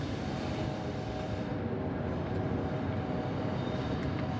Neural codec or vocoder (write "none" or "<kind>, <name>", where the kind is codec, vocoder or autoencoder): vocoder, BigVGAN v2